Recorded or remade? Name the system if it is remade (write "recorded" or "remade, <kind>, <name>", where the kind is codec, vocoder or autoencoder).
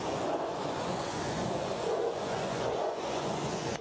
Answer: remade, vocoder, Vocos